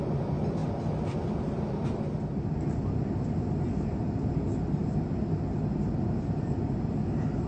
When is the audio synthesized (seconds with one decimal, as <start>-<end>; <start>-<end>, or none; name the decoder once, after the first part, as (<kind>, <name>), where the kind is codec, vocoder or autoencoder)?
none